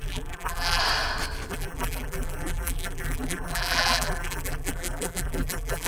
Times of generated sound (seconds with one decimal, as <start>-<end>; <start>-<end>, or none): 0.0-0.8; 1.5-5.9